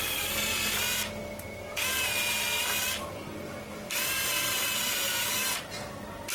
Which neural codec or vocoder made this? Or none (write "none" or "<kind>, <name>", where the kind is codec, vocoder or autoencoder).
none